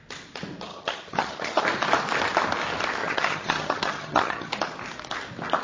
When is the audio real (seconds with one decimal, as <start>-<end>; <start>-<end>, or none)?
0.0-0.7; 1.6-3.0; 4.5-5.6